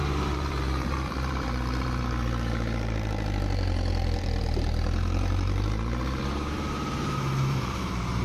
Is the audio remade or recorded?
remade